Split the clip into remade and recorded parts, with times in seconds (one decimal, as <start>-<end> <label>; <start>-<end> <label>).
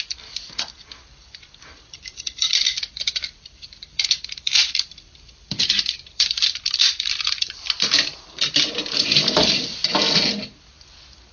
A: 0.0-9.8 remade; 9.8-11.3 recorded